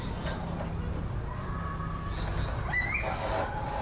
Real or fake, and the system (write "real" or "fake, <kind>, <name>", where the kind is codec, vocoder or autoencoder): real